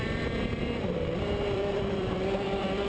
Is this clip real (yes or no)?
no